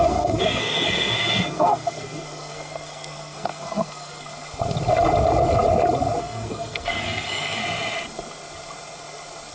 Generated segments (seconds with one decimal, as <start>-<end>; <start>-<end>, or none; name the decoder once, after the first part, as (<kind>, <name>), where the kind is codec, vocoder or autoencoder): 0.0-4.3 (codec, SNAC); 6.2-7.6